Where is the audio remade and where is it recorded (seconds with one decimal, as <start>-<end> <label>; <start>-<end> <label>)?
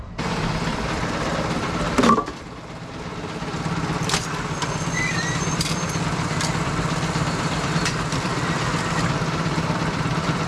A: 0.0-10.5 remade